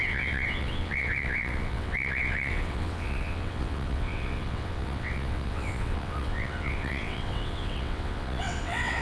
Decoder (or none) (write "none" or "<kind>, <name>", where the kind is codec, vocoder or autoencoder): vocoder, WaveNeXt